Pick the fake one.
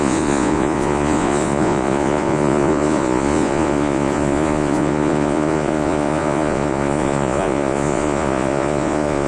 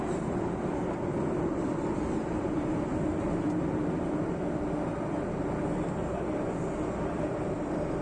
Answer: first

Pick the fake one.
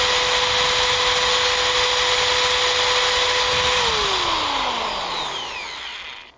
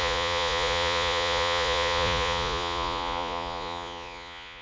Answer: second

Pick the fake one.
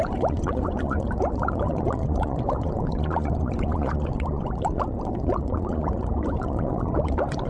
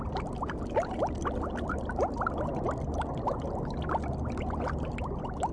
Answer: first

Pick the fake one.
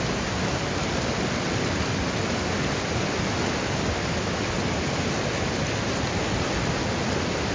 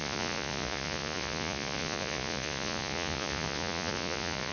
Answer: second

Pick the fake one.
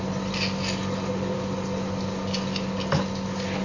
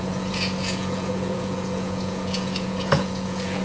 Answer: second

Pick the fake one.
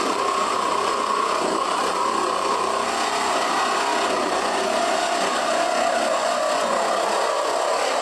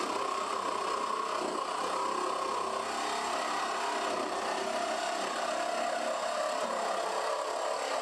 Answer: first